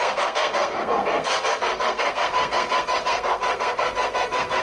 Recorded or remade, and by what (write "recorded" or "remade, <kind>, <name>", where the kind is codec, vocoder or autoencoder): remade, codec, SNAC